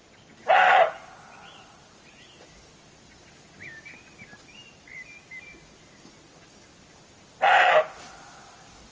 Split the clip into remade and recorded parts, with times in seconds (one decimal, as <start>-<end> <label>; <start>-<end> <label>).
0.0-8.9 recorded